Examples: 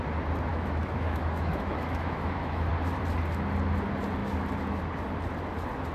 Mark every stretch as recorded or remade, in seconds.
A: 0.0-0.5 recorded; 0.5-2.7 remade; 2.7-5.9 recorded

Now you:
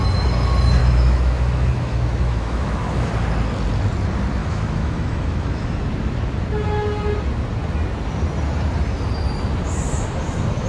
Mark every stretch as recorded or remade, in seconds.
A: 0.0-0.8 recorded; 0.8-3.1 remade; 3.1-4.4 recorded; 4.4-5.8 remade; 5.8-10.7 recorded

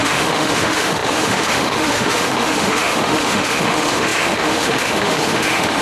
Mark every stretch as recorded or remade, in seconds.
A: 0.0-5.8 remade

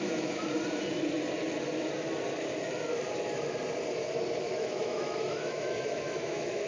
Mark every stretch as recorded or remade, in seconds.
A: 0.0-0.4 remade; 0.4-4.4 recorded; 4.4-6.7 remade

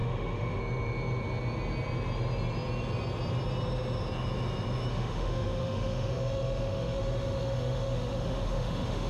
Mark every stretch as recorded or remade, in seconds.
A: 0.0-0.6 remade; 0.6-4.9 recorded; 4.9-9.1 remade

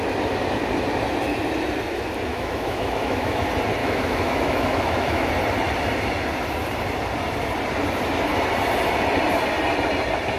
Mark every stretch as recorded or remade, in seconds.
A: 0.0-2.3 recorded; 2.3-3.4 remade; 3.4-3.8 recorded; 3.8-5.3 remade; 5.3-10.4 recorded

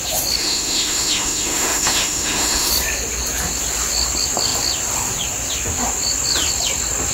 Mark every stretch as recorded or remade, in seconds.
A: 0.0-0.4 recorded; 0.4-2.7 remade; 2.7-7.1 recorded